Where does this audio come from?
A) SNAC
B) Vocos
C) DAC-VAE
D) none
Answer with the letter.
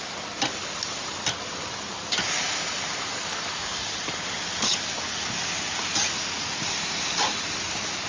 D